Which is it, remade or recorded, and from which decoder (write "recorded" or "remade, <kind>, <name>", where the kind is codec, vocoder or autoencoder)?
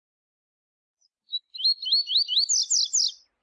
recorded